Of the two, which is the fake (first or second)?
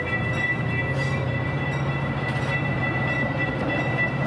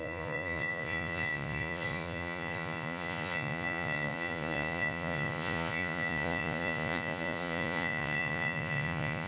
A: second